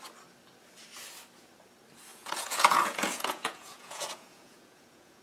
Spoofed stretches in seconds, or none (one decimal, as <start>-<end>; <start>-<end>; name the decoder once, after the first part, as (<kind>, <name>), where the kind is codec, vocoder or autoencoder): 2.1-5.2 (vocoder, Vocos)